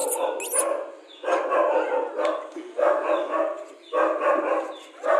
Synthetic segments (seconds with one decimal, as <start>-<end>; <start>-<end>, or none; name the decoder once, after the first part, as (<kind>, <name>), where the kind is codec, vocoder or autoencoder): none